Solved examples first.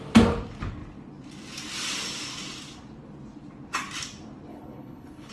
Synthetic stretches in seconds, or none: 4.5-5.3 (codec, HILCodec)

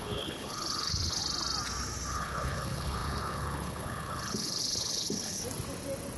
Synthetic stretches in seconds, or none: 0.0-1.2 (codec, HILCodec); 2.1-5.4

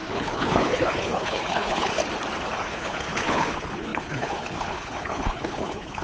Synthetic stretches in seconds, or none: 0.0-2.0 (codec, HILCodec); 2.6-6.0